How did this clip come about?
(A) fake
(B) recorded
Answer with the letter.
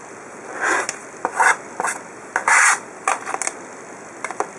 B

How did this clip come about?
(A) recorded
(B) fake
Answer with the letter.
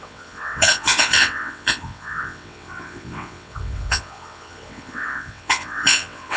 B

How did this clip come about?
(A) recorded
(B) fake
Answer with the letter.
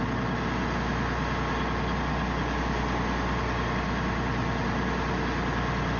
A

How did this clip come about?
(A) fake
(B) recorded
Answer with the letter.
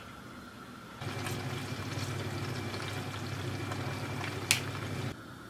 B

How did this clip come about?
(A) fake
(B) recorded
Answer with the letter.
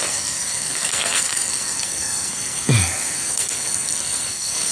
A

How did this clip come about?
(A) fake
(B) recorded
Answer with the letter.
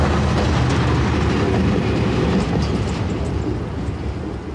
B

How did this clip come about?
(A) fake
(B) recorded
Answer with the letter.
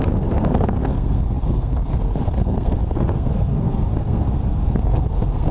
A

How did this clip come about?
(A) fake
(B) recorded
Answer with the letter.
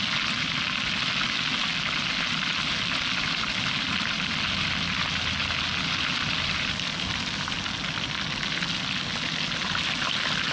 B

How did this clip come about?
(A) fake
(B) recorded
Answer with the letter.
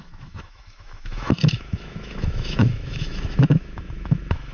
A